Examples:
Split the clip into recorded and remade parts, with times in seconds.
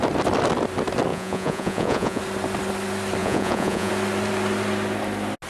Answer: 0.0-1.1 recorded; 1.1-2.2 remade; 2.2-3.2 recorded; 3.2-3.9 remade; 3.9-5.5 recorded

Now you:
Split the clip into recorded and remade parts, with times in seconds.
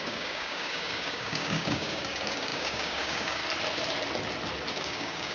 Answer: 0.0-3.4 remade; 3.4-4.7 recorded; 4.7-5.3 remade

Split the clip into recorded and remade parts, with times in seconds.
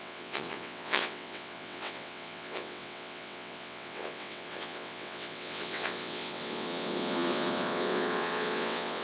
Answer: 0.0-9.0 remade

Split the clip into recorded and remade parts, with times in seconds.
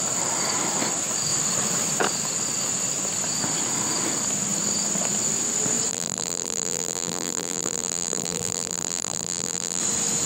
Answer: 0.0-5.9 recorded; 5.9-9.8 remade; 9.8-10.3 recorded